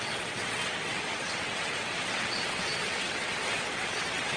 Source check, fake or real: fake